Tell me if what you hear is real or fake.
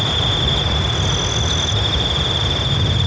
real